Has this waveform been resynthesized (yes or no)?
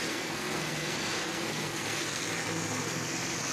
yes